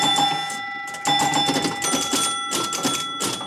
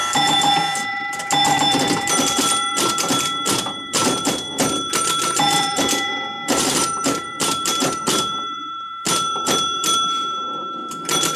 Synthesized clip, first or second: second